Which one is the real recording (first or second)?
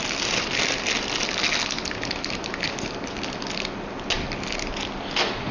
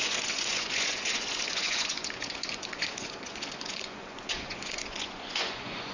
first